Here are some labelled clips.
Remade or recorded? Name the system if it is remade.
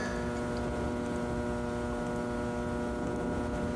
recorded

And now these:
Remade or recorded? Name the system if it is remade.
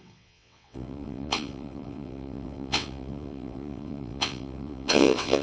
remade, vocoder, WaveNeXt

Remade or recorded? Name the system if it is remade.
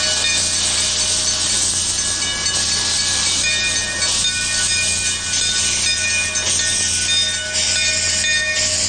recorded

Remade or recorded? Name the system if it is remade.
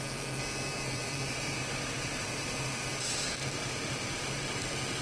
remade, vocoder, BigVGAN v2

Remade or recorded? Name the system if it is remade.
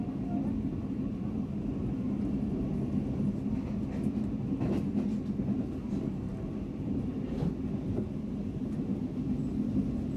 recorded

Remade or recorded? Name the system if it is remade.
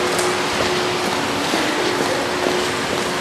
recorded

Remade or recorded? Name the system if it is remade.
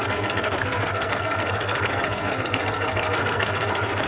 remade, codec, SNAC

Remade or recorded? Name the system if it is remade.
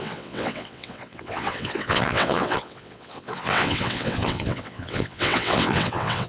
remade, vocoder, WaveNeXt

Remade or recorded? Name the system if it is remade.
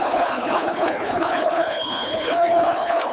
remade, codec, HILCodec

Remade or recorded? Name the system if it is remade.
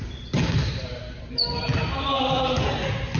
recorded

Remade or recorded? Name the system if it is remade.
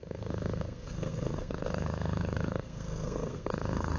remade, codec, SNAC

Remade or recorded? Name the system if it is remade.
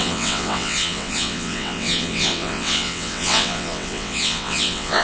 remade, vocoder, WaveNeXt